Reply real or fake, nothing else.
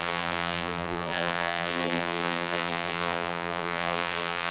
fake